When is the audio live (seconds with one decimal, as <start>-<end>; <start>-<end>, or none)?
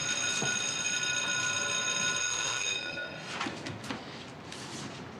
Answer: 0.0-2.2; 3.3-5.2